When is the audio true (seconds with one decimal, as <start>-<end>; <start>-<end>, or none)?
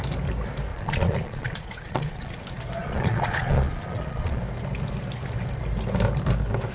0.0-0.7; 2.4-2.8; 4.4-6.7